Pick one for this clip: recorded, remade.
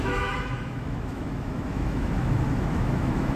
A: remade